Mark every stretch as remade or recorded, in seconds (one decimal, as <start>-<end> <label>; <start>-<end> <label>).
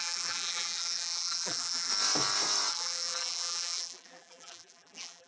0.0-1.9 remade; 1.9-2.7 recorded; 2.7-5.3 remade